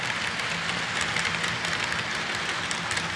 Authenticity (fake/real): real